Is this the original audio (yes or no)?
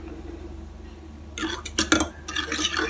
yes